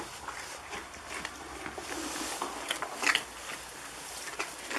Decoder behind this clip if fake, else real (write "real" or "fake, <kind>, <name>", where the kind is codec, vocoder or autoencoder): real